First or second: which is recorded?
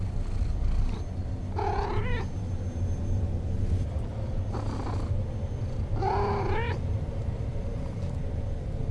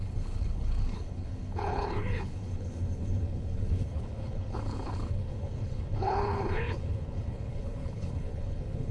first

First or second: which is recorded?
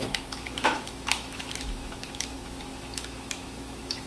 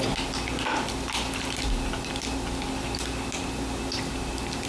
second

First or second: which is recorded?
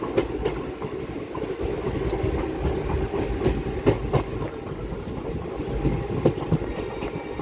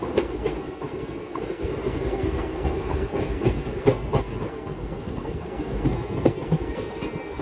first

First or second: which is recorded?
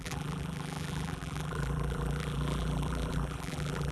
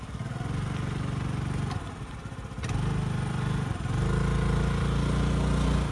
second